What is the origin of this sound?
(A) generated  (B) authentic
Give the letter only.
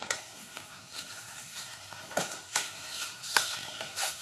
A